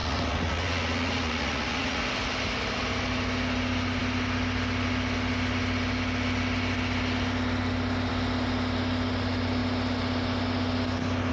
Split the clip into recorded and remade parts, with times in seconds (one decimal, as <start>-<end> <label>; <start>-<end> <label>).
0.0-2.0 remade; 2.0-11.3 recorded